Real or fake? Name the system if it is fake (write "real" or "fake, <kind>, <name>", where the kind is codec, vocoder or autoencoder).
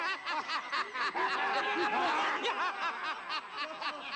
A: real